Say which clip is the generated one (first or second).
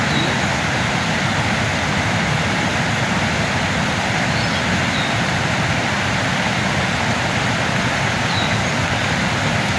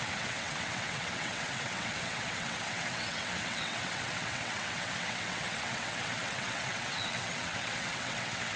second